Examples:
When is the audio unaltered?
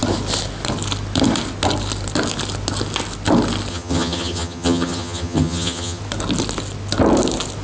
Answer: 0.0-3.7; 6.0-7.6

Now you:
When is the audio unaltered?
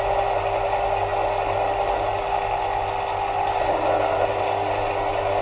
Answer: 0.0-5.4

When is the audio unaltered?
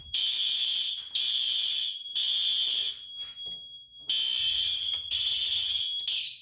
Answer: 0.0-4.4; 5.8-6.4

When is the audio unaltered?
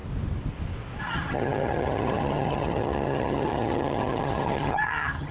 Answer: 0.0-1.0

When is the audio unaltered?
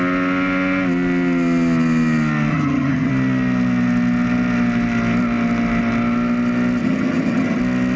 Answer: 0.0-2.5; 3.1-6.8; 7.6-8.0